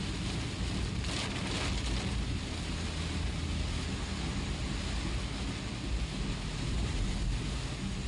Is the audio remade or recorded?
recorded